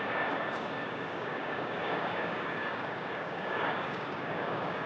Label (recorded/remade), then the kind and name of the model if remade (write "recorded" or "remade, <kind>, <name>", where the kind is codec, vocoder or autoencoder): remade, codec, DAC